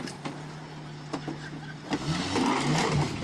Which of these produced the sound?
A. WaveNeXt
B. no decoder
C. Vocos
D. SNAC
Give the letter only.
B